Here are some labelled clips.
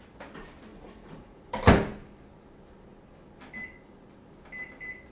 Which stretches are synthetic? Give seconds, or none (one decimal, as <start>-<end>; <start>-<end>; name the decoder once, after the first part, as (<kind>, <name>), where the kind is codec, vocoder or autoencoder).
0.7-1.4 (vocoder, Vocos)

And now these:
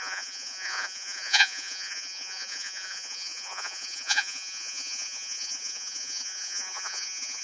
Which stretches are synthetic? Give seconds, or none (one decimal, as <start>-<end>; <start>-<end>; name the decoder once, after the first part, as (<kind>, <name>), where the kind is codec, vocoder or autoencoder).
0.0-7.4 (vocoder, Vocos)

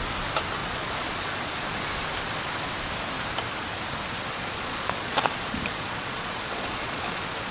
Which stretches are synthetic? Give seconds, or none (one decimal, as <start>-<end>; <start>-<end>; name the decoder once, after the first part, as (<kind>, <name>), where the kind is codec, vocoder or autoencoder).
0.6-1.8 (vocoder, Vocos); 4.3-7.5

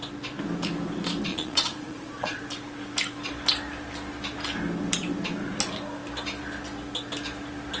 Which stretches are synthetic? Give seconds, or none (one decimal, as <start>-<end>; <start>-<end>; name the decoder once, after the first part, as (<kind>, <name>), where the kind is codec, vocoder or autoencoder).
1.3-2.4 (vocoder, Vocos)

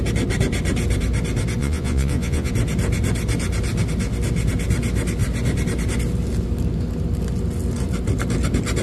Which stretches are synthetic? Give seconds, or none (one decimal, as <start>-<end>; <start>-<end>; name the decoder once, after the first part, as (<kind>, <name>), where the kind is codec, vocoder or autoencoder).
1.6-2.5 (vocoder, Vocos)

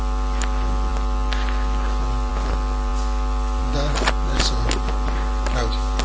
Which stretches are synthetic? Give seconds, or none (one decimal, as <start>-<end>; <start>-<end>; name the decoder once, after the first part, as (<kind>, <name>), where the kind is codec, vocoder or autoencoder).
none